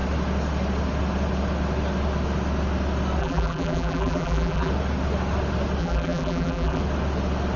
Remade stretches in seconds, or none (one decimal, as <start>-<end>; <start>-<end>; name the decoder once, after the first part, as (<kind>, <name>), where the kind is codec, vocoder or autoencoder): 3.2-4.7 (vocoder, BigVGAN v2); 5.8-6.8